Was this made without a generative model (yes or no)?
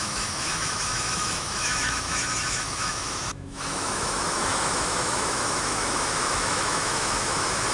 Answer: no